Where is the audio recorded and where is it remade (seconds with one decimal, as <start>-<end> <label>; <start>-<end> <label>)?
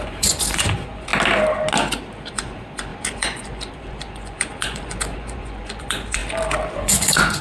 0.0-1.1 remade; 1.1-2.3 recorded; 2.3-6.2 remade; 6.2-6.7 recorded; 6.7-7.4 remade